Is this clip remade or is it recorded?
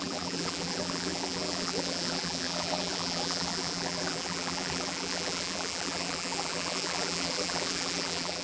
remade